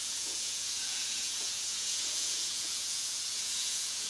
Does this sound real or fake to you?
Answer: fake